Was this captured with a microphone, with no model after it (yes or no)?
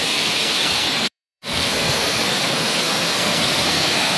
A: no